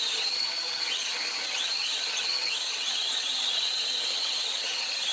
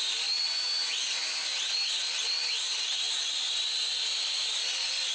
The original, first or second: second